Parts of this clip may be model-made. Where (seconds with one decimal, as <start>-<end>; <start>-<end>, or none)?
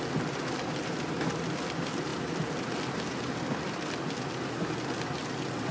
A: none